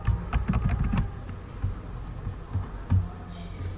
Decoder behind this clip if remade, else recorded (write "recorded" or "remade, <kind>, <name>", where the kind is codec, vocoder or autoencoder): recorded